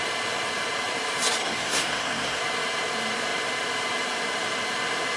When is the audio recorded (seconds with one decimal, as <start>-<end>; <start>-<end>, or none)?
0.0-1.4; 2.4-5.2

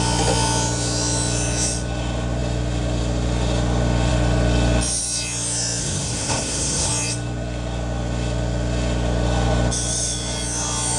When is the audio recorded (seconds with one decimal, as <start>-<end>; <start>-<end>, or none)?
0.0-5.8; 6.9-11.0

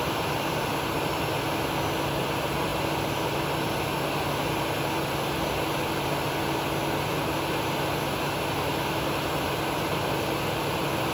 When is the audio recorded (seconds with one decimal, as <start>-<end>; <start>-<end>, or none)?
0.0-11.1